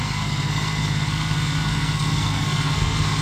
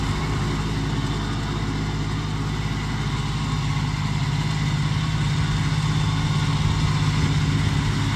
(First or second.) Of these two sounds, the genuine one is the second